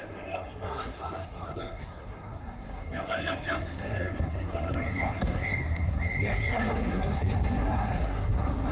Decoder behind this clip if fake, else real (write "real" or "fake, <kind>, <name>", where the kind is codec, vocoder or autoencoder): fake, codec, SNAC